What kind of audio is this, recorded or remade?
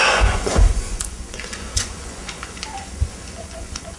remade